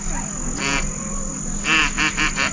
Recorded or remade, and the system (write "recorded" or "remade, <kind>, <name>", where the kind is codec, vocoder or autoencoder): recorded